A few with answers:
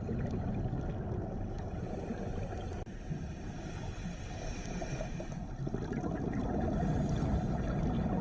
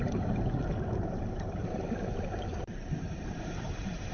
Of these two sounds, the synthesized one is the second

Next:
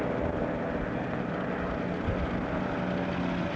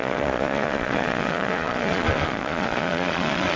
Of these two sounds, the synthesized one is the second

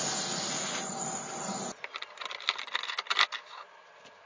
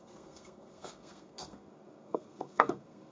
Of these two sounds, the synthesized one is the second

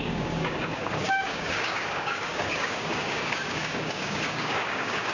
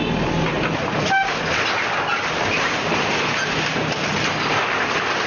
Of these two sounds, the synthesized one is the first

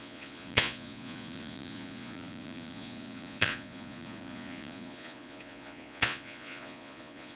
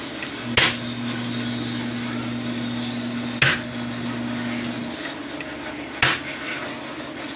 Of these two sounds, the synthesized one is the first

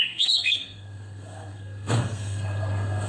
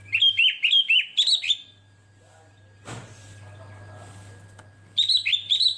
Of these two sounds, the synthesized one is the first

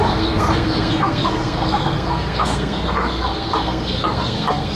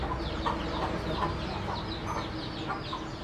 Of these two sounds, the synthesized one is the first